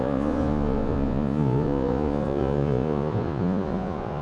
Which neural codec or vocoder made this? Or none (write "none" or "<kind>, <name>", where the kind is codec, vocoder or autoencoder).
vocoder, Vocos